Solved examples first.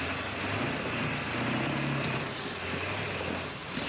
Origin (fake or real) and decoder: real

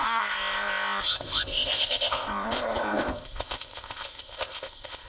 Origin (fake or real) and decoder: fake, codec, ZipCodec